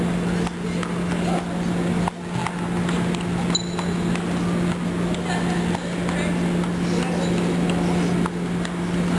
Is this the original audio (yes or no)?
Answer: yes